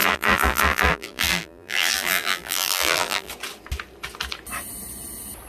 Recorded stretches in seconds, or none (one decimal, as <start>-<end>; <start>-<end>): 3.3-5.5